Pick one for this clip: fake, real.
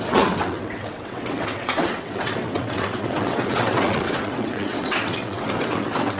fake